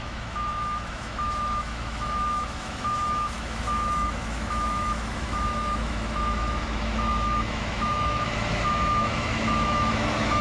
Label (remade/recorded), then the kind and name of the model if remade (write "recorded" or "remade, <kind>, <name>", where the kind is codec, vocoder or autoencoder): remade, autoencoder, DAC-VAE